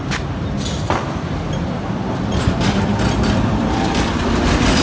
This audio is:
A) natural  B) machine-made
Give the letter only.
B